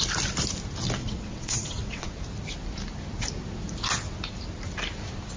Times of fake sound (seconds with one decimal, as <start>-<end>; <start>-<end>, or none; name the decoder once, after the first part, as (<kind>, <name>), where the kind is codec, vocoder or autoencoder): 1.0-2.1 (vocoder, WaveNeXt)